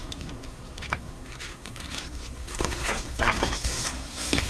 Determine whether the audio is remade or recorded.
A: remade